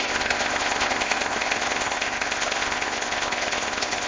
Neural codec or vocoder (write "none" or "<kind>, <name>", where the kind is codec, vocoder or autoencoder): codec, ZipCodec